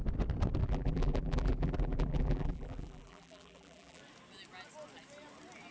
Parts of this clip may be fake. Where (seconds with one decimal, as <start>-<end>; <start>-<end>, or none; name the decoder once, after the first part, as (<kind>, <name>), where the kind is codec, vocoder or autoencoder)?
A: 0.6-4.0 (vocoder, BigVGAN v2)